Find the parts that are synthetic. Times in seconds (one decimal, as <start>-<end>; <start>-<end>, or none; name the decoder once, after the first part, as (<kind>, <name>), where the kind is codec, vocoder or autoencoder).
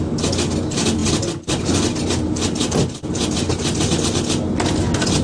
none